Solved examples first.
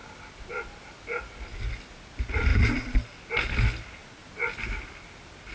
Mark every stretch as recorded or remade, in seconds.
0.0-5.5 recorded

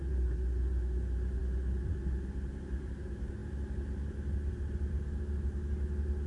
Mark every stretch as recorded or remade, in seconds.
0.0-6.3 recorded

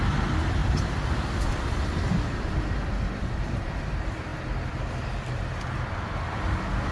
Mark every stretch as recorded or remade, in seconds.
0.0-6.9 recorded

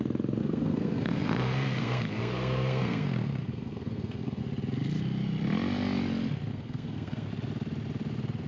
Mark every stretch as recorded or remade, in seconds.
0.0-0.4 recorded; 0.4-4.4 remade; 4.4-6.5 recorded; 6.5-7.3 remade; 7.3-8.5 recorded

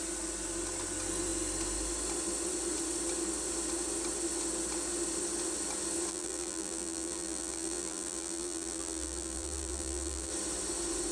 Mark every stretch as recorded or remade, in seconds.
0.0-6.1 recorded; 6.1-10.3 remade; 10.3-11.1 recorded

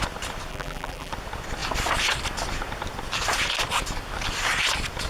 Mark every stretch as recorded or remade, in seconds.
0.0-0.5 recorded; 0.5-1.1 remade; 1.1-5.1 recorded